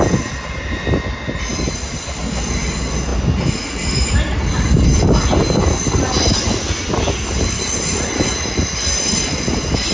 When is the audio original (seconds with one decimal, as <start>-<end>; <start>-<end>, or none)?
0.0-9.9